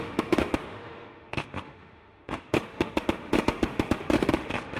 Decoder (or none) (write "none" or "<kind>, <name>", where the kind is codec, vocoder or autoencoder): autoencoder, DAC-VAE